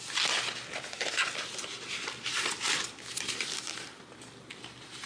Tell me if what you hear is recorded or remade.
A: recorded